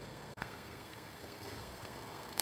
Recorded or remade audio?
remade